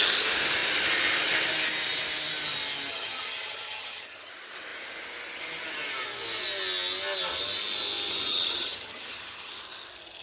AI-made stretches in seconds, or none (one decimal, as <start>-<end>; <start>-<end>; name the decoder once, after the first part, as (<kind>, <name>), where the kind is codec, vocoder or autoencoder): 2.9-4.3 (vocoder, HiFi-GAN); 8.3-9.5